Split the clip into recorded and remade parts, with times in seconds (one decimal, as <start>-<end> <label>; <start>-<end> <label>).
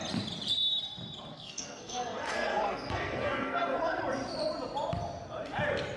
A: 0.0-1.3 recorded; 1.3-4.0 remade; 4.0-6.0 recorded